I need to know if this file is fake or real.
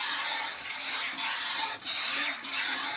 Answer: real